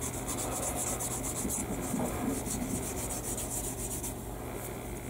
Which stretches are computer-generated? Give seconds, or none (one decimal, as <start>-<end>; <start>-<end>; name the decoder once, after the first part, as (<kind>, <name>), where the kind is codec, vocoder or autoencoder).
none